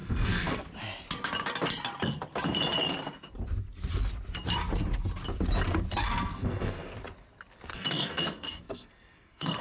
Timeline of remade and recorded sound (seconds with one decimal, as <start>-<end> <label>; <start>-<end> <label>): 0.0-0.6 remade; 0.6-6.0 recorded; 6.0-6.9 remade; 6.9-7.7 recorded; 7.7-9.6 remade